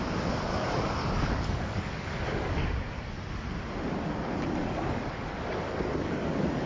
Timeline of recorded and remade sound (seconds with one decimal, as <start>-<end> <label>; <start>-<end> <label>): 0.0-0.5 recorded; 0.5-2.5 remade; 2.5-4.6 recorded; 4.6-6.7 remade